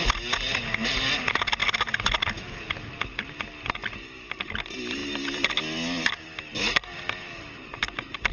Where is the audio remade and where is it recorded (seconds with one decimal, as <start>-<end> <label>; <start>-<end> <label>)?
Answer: 0.0-8.3 recorded